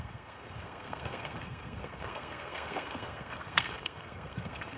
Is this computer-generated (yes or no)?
yes